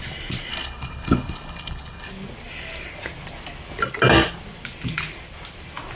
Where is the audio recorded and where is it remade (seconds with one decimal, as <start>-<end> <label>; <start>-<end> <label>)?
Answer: 0.0-0.5 recorded; 0.5-2.1 remade; 2.1-6.0 recorded